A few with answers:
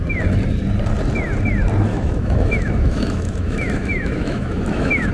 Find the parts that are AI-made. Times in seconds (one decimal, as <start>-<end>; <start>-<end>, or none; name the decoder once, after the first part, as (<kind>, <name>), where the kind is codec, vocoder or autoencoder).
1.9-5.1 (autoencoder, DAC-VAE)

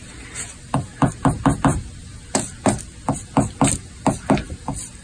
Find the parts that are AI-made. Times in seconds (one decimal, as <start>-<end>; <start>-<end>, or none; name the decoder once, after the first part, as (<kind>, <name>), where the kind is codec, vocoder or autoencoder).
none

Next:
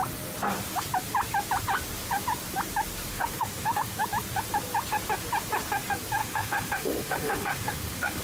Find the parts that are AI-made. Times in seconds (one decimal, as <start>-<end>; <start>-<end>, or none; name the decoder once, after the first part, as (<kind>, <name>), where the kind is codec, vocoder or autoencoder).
3.1-4.0 (autoencoder, DAC-VAE); 6.2-8.2

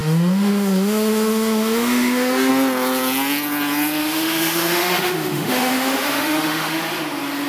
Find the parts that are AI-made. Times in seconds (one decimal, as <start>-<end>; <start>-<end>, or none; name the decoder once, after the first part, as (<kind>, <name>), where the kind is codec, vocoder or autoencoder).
0.0-2.5 (autoencoder, DAC-VAE); 4.0-6.8

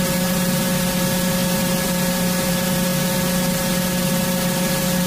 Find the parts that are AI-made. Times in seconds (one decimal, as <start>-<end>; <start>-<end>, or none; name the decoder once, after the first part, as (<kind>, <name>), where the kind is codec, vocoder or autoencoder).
none

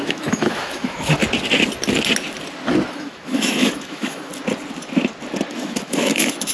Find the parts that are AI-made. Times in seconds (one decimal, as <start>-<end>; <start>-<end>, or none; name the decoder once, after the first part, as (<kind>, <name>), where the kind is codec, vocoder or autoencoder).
0.0-1.2 (autoencoder, DAC-VAE); 2.9-4.3; 5.5-6.5

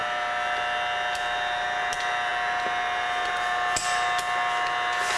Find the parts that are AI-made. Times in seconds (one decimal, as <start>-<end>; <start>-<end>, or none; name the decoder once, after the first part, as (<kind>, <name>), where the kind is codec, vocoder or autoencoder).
none

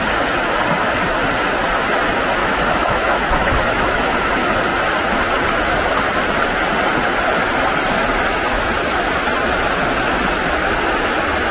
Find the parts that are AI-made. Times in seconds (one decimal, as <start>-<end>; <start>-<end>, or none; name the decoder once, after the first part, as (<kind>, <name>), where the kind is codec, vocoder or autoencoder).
2.4-4.3 (autoencoder, DAC-VAE)